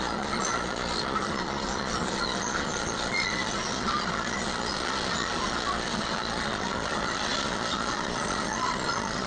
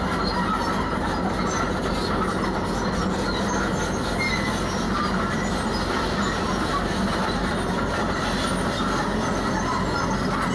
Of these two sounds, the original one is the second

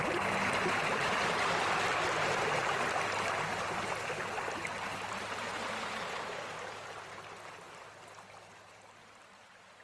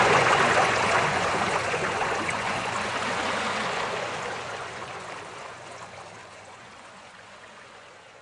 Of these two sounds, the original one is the first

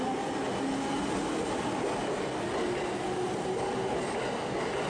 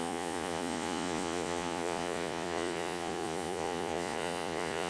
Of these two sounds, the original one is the first